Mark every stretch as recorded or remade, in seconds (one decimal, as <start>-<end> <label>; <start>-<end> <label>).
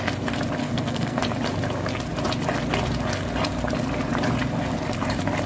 0.0-0.6 recorded; 0.6-1.2 remade; 1.2-5.5 recorded